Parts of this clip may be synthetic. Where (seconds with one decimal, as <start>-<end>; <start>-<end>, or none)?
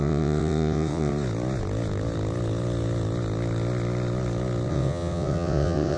0.0-1.1; 4.7-6.0